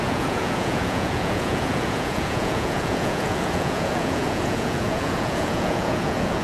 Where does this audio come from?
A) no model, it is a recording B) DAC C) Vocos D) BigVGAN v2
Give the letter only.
C